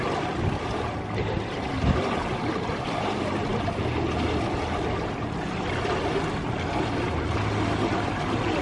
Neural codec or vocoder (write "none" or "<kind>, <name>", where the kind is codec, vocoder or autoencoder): none